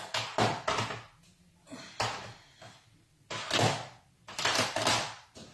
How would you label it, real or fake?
real